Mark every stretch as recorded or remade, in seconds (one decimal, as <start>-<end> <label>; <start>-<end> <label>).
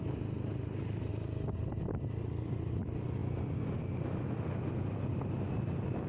0.0-6.1 recorded